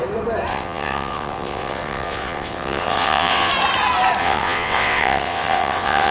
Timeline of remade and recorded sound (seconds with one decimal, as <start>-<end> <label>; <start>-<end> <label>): 0.0-0.5 recorded; 0.5-3.5 remade; 3.5-4.2 recorded; 4.2-6.1 remade